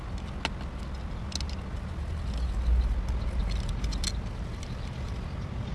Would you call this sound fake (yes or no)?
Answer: no